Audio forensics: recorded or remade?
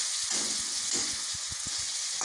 remade